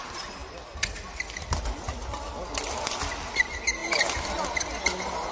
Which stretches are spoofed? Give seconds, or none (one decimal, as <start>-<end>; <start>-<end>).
none